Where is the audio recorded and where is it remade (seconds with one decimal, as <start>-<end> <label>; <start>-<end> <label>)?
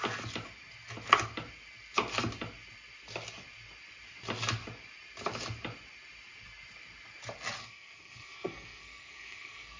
0.0-7.6 recorded; 7.6-9.8 remade